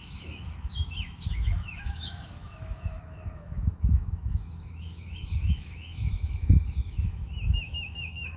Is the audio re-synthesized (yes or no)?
yes